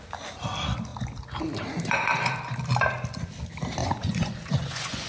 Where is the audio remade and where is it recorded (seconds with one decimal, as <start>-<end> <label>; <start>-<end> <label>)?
0.0-3.8 recorded; 3.8-5.1 remade